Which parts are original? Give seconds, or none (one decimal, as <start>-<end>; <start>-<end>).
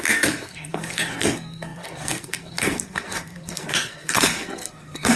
none